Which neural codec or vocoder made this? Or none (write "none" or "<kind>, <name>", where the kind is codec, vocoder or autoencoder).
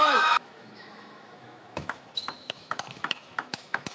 autoencoder, DAC-VAE